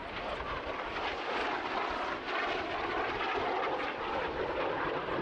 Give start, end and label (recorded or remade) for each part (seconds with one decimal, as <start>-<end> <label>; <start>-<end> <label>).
0.0-1.1 remade; 1.1-4.2 recorded; 4.2-5.2 remade